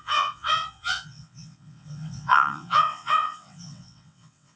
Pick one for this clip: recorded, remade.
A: remade